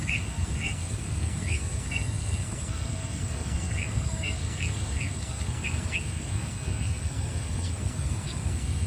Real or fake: fake